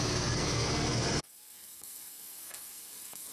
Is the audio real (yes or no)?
no